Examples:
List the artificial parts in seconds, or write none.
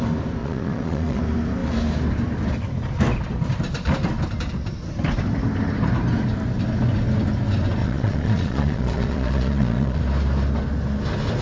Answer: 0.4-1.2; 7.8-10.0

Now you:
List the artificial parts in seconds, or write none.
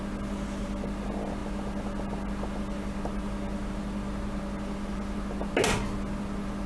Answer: none